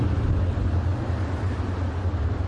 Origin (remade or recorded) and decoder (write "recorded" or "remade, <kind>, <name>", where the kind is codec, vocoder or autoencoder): recorded